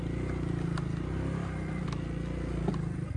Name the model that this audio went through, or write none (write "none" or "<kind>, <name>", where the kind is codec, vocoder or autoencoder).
none